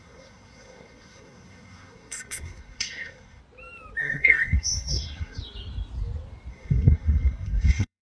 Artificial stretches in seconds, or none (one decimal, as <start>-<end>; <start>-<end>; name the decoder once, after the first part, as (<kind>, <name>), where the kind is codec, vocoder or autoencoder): 0.0-3.4 (codec, SNAC); 4.0-5.4; 6.5-8.0